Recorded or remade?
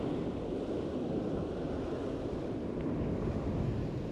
recorded